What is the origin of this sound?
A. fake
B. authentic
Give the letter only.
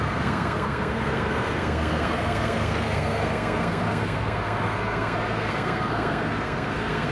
A